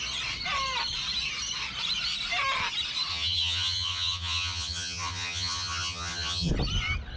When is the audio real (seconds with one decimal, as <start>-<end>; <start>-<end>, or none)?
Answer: 0.0-3.1; 6.5-7.2